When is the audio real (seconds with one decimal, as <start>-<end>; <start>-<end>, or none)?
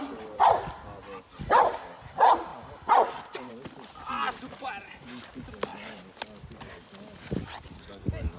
0.0-8.4